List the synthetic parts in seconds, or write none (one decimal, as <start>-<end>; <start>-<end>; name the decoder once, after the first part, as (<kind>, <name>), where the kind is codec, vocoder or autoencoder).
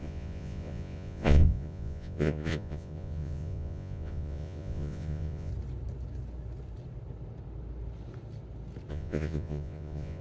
0.0-5.5 (vocoder, Vocos); 8.9-10.2